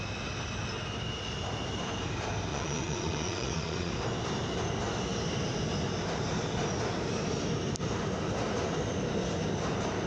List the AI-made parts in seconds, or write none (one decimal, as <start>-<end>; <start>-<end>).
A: 2.5-3.9